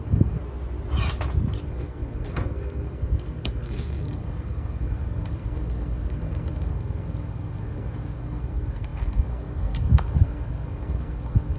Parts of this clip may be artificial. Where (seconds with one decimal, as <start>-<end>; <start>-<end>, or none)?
0.0-0.4; 1.7-11.6